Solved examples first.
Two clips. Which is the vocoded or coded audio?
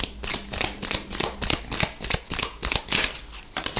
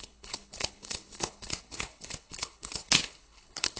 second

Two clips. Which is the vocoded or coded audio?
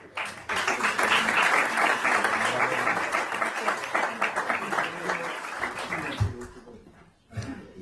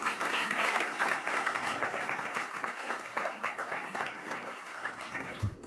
second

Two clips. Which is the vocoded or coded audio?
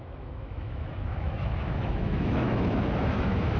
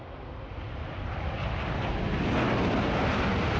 first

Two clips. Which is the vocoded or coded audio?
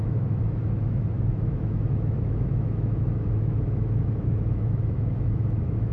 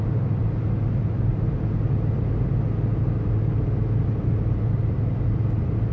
first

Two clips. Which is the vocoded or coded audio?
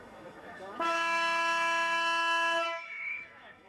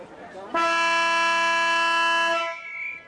first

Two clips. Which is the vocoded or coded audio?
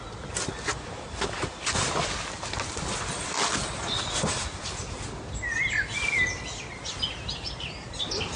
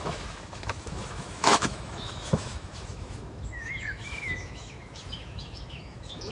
second